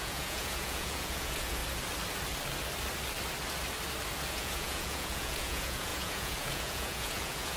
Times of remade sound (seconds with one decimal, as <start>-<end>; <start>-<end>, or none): 0.0-1.6; 4.3-7.6